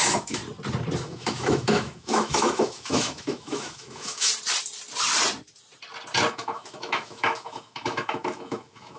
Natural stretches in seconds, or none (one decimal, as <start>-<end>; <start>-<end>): 0.4-1.0; 4.3-6.3